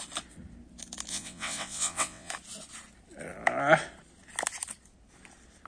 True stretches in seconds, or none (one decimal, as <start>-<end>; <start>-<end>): 0.0-1.1; 2.3-5.7